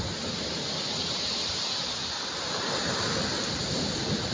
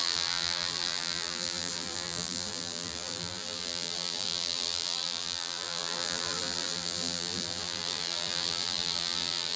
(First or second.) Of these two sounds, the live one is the first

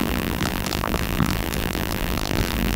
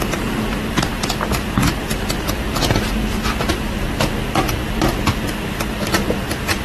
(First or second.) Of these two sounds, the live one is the second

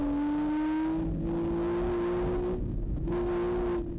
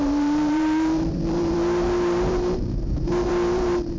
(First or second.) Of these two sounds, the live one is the first